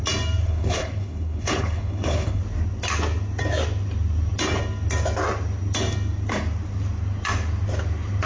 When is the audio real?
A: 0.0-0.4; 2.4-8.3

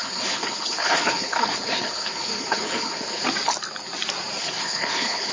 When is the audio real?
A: 3.2-4.4